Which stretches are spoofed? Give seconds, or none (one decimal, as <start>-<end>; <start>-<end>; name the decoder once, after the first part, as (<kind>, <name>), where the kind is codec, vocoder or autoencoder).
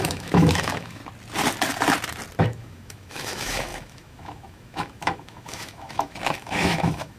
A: 0.0-1.0 (autoencoder, DAC-VAE); 2.4-7.2